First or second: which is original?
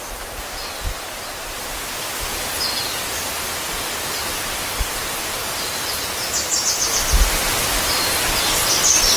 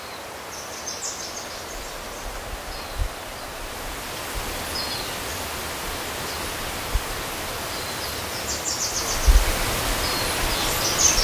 second